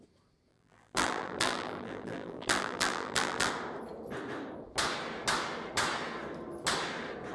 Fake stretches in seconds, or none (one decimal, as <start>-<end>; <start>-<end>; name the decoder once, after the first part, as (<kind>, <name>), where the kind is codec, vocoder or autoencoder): 0.5-3.5 (vocoder, BigVGAN v2)

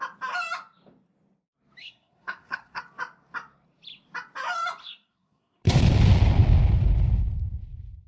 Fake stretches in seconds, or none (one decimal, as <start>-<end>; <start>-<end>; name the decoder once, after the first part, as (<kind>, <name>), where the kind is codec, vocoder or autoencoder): 1.8-2.8 (codec, SNAC); 4.8-5.8

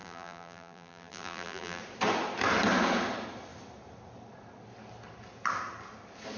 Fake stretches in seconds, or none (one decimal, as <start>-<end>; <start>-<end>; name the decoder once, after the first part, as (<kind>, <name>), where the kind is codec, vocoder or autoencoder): 0.0-1.8 (vocoder, BigVGAN v2)